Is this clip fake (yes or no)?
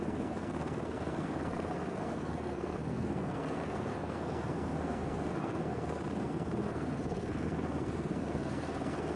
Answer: yes